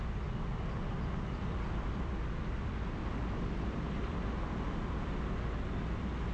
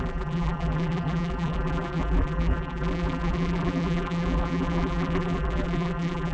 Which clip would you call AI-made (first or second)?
second